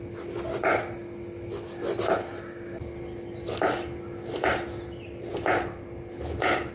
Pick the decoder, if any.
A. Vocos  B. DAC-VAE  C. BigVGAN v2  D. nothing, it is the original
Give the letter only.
D